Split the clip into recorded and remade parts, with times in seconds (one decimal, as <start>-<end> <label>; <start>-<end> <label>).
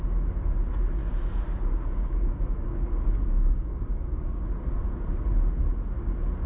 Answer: 0.0-1.0 recorded; 1.0-4.5 remade; 4.5-6.5 recorded